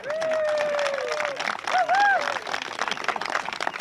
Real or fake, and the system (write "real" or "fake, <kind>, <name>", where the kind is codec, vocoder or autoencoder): real